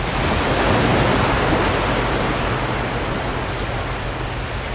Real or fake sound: real